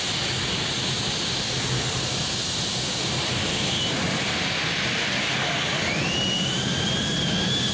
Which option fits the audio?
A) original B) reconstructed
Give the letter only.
A